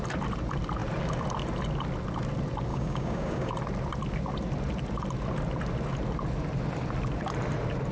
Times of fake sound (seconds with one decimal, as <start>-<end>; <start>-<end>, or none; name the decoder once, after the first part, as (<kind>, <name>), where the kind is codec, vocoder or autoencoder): 2.7-3.5 (codec, DAC)